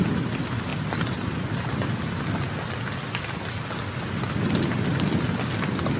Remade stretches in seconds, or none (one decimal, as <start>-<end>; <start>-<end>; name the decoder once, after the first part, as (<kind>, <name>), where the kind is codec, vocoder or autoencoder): none